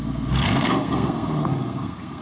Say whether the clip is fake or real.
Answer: fake